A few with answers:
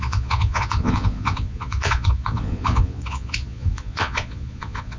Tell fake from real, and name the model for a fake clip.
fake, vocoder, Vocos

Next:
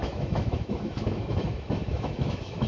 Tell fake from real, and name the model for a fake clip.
fake, autoencoder, DAC-VAE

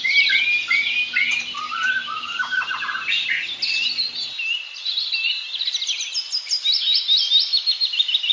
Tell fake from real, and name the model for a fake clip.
real